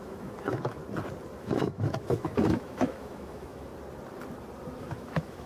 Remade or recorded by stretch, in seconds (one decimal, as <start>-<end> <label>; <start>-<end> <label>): 0.0-0.8 remade; 0.8-1.4 recorded; 1.4-3.7 remade; 3.7-4.8 recorded; 4.8-5.5 remade